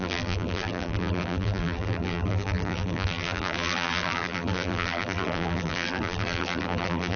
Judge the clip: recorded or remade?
remade